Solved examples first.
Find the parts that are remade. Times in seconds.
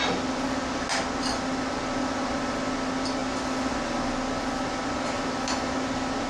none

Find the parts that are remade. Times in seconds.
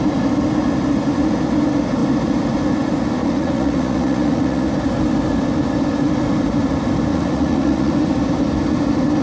3.2-4.7 (vocoder, Vocos); 7.1-7.9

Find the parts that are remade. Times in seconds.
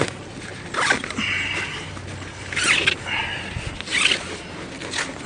none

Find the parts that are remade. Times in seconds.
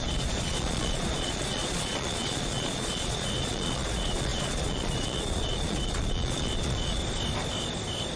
0.0-7.0 (vocoder, Vocos)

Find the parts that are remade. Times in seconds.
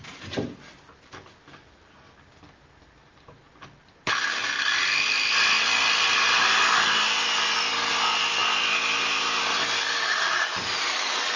none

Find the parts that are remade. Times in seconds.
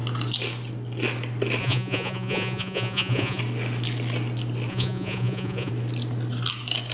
1.6-3.4 (vocoder, Vocos); 4.7-5.7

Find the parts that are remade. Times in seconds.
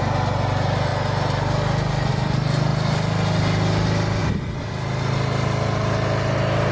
none